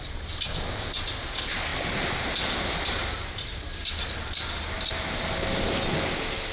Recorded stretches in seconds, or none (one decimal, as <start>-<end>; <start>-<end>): 0.0-6.5